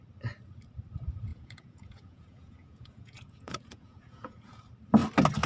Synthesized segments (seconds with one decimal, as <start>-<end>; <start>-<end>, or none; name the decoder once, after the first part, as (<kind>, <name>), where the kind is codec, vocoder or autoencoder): 1.3-4.6 (vocoder, Vocos)